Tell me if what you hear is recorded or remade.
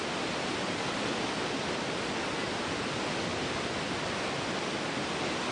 recorded